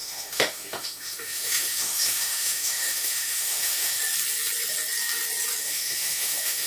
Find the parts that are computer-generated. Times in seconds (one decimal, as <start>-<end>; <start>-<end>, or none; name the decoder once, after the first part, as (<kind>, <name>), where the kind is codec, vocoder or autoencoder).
0.0-4.0 (autoencoder, DAC-VAE); 5.6-6.7